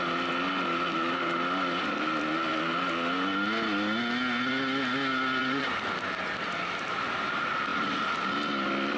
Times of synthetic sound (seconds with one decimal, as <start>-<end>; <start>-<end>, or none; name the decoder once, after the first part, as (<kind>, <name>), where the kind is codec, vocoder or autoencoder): 5.4-6.7 (vocoder, BigVGAN v2)